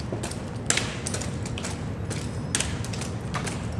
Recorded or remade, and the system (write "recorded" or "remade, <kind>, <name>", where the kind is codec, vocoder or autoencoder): recorded